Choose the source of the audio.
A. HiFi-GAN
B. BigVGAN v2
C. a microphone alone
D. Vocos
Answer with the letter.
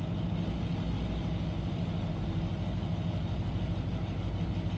C